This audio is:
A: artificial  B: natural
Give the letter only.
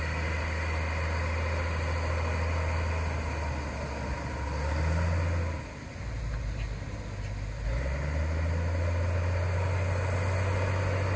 B